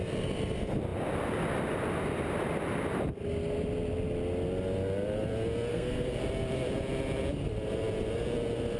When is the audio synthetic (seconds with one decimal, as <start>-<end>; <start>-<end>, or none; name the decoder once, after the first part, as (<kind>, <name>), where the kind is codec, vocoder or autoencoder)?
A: 5.7-6.2 (codec, SNAC)